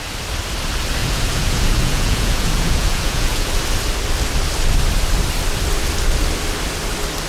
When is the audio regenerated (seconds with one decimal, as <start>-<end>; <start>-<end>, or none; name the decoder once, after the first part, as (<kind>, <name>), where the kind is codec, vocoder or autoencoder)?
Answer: 1.0-3.5 (vocoder, Vocos)